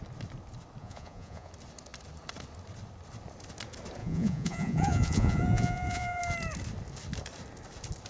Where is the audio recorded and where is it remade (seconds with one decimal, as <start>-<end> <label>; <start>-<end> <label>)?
0.0-0.8 recorded; 0.8-1.5 remade; 1.5-4.0 recorded; 4.0-6.2 remade; 6.2-8.1 recorded